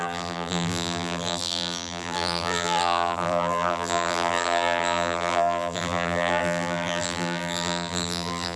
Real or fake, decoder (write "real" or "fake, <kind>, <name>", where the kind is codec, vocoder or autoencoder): fake, vocoder, BigVGAN v2